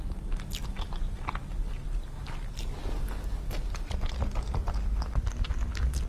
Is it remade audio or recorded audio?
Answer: recorded